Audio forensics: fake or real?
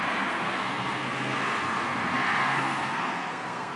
fake